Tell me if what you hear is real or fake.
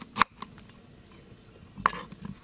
real